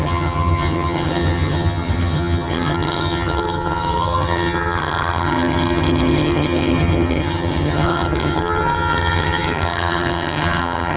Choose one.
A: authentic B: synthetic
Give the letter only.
B